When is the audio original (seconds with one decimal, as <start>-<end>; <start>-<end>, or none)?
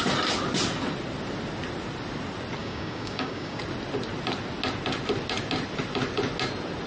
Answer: 0.0-2.6; 3.6-6.9